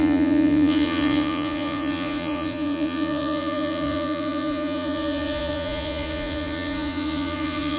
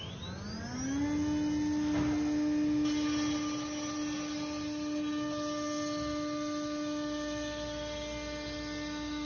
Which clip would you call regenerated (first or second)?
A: first